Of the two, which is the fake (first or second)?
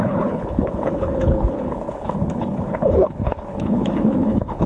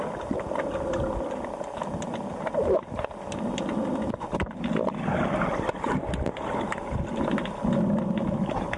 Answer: first